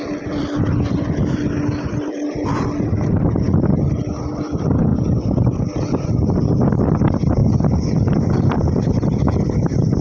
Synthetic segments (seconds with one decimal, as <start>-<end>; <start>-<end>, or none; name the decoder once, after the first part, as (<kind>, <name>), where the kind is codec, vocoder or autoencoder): none